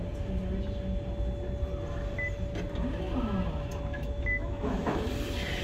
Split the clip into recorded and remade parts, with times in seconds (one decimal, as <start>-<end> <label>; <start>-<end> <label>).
0.0-3.9 recorded; 3.9-5.1 remade; 5.1-5.6 recorded